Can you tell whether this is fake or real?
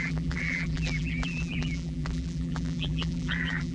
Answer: fake